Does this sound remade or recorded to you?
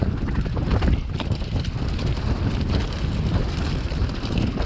remade